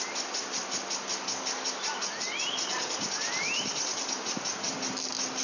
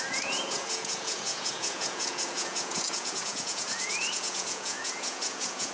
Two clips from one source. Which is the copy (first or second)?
second